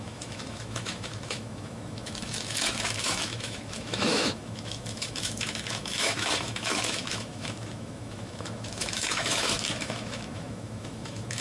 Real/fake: fake